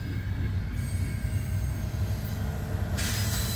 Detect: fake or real real